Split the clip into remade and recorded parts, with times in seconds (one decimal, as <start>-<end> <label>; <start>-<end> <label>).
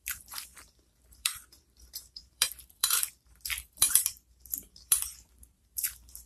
0.0-6.3 remade